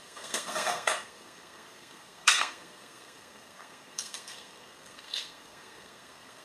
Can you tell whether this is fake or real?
fake